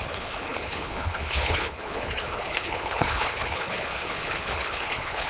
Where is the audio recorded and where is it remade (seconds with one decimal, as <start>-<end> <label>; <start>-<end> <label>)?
0.0-5.3 remade